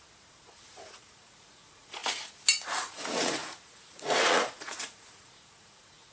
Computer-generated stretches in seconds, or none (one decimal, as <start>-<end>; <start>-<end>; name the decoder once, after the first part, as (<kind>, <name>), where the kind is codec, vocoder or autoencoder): 0.0-2.0 (vocoder, Vocos); 2.8-6.1